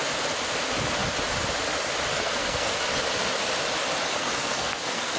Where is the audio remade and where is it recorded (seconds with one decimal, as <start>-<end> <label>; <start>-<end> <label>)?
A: 0.0-2.1 recorded; 2.1-2.8 remade; 2.8-4.2 recorded; 4.2-5.2 remade